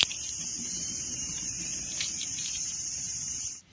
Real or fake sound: fake